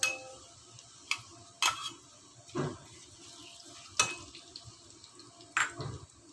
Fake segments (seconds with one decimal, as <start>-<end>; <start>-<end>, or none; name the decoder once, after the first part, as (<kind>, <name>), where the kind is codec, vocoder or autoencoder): none